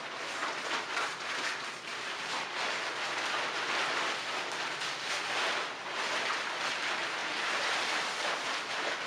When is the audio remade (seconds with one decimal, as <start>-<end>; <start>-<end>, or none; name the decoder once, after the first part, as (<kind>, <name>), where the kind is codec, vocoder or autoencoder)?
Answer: 1.9-2.5 (vocoder, BigVGAN v2); 7.2-7.7